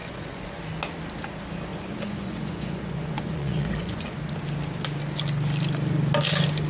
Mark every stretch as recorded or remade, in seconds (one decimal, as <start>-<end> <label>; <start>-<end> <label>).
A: 0.0-0.6 remade; 0.6-1.7 recorded; 1.7-4.2 remade; 4.2-6.7 recorded